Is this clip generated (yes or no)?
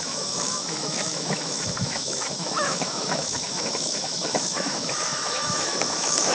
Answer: yes